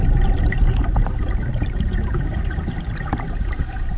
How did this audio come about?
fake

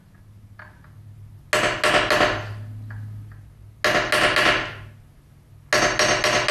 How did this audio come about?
real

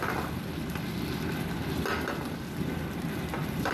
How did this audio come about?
real